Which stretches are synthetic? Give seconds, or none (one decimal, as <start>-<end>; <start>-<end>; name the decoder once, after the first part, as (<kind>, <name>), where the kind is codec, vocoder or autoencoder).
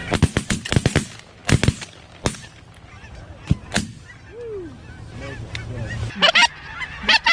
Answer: none